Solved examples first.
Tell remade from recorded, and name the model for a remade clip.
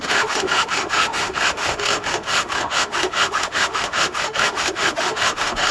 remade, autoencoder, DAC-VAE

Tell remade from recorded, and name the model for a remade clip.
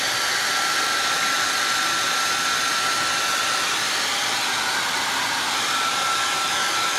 recorded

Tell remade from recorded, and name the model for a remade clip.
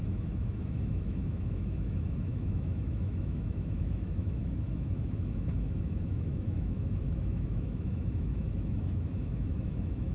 remade, autoencoder, DAC-VAE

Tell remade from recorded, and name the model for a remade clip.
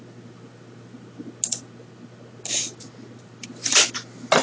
recorded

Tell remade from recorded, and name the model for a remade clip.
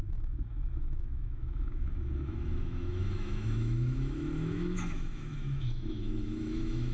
remade, autoencoder, DAC-VAE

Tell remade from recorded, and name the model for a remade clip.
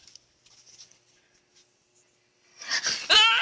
recorded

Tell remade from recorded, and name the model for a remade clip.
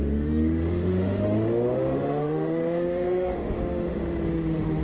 remade, autoencoder, DAC-VAE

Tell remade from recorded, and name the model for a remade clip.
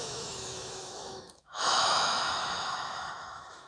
remade, autoencoder, DAC-VAE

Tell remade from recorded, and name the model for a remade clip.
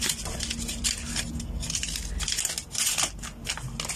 recorded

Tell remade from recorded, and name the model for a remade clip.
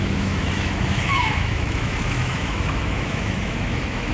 remade, autoencoder, DAC-VAE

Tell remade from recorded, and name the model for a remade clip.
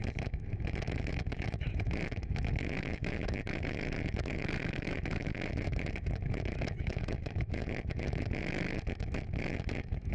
remade, autoencoder, DAC-VAE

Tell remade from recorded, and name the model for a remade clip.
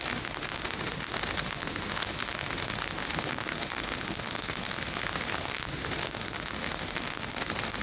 remade, autoencoder, DAC-VAE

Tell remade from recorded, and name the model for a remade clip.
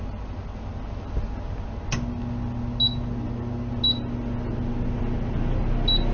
recorded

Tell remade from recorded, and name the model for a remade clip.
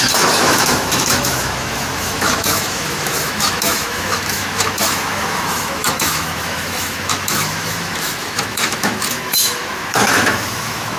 remade, autoencoder, DAC-VAE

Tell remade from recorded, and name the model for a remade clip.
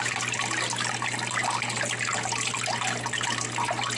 recorded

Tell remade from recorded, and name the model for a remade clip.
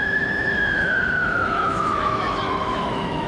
remade, autoencoder, DAC-VAE